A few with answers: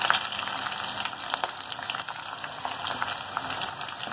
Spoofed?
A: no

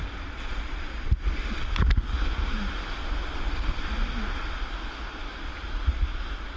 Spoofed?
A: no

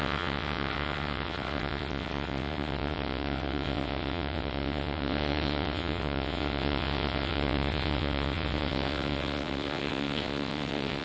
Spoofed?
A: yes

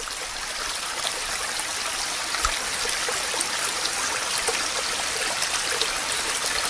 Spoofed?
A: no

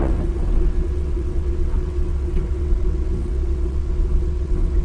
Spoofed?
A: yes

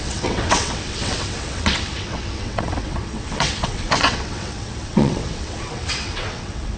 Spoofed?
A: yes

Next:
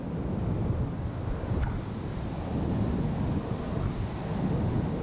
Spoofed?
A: no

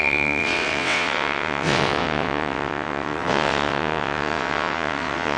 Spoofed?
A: yes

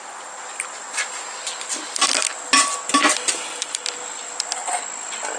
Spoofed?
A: no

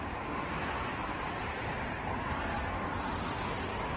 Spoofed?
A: no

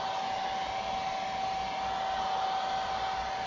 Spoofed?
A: no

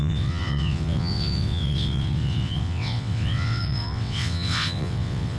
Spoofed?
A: yes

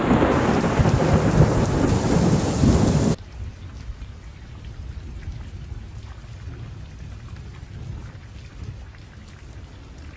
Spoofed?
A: no